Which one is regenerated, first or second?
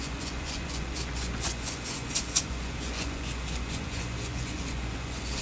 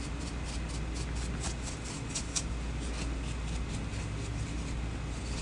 first